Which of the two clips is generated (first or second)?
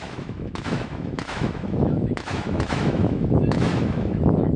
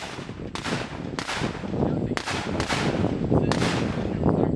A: first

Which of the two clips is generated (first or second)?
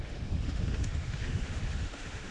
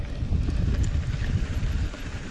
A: first